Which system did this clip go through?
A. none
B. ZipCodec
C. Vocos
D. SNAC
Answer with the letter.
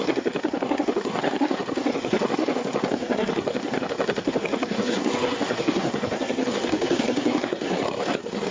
D